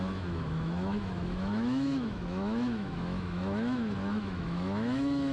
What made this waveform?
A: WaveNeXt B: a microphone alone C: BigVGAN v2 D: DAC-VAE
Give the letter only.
D